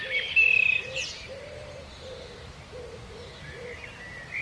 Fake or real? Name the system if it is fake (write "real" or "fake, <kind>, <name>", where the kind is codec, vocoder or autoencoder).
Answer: real